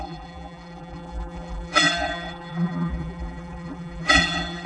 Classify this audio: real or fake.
fake